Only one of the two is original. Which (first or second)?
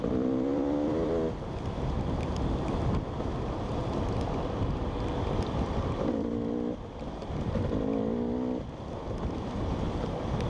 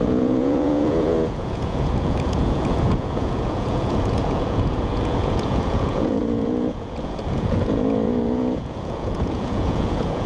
first